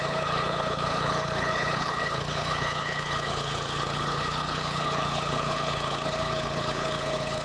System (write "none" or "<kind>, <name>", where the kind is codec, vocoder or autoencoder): codec, HILCodec